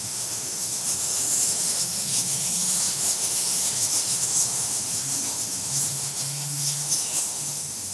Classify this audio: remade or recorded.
remade